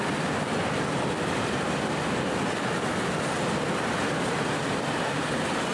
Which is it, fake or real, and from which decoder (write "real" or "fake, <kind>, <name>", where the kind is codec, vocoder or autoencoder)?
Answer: real